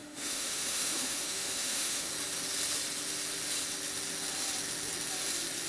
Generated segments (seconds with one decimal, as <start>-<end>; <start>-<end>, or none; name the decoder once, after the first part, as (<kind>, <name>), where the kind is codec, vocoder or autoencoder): 0.0-2.1 (autoencoder, DAC-VAE)